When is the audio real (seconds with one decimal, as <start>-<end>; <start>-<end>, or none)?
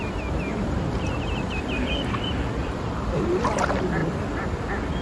0.0-0.5; 1.9-2.6; 3.4-4.0; 4.6-5.0